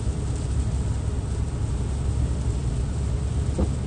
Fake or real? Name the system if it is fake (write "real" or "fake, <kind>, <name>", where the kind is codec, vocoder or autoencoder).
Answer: real